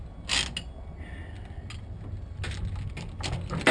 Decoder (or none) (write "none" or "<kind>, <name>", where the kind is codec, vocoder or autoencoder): none